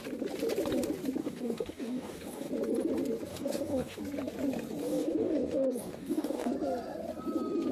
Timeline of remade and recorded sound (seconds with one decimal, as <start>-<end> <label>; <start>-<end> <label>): 0.0-1.2 recorded; 1.2-2.5 remade; 2.5-3.3 recorded; 3.3-4.0 remade; 4.0-4.8 recorded; 4.8-6.5 remade; 6.5-7.7 recorded